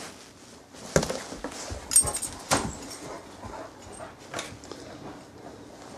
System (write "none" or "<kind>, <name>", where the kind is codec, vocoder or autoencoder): none